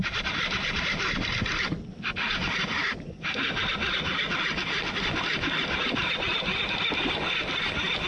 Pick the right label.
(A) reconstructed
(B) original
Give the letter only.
B